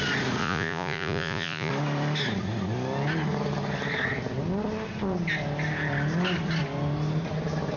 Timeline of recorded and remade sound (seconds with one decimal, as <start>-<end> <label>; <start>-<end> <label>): 0.0-0.4 recorded; 0.4-1.7 remade; 1.7-7.8 recorded